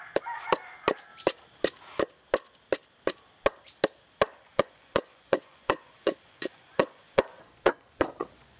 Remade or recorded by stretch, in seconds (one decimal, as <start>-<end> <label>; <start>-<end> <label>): 0.0-4.5 recorded; 4.5-8.6 remade